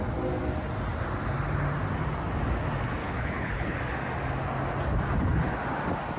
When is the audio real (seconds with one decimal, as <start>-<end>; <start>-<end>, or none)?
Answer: 0.0-3.0; 3.8-6.2